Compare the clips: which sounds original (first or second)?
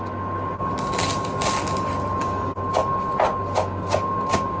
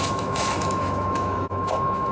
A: first